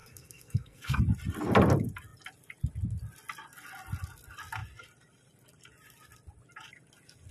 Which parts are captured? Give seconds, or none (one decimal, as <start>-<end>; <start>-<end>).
1.0-7.3